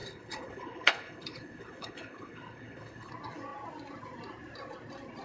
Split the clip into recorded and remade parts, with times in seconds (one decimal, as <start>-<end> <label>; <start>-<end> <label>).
0.0-3.1 remade; 3.1-5.2 recorded